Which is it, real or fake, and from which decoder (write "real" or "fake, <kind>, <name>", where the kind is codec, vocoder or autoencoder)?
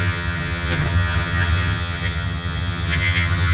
fake, vocoder, HiFi-GAN